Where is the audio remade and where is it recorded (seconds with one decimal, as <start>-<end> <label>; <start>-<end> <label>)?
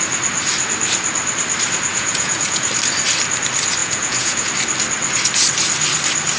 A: 0.0-1.9 recorded; 1.9-2.7 remade; 2.7-3.8 recorded; 3.8-4.5 remade; 4.5-6.4 recorded